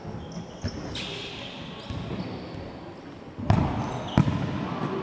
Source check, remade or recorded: recorded